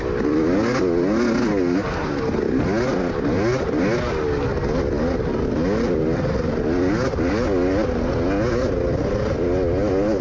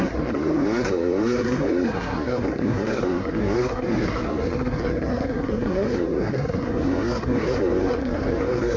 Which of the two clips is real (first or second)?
first